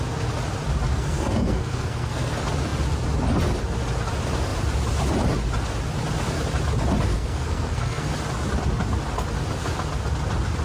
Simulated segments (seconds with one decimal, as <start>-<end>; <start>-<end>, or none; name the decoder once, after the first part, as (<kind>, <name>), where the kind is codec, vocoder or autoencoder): 0.9-2.3 (codec, SNAC); 7.1-8.1